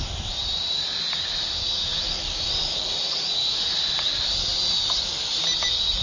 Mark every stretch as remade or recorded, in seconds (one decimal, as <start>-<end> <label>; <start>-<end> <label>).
0.0-1.9 recorded; 1.9-2.5 remade; 2.5-6.0 recorded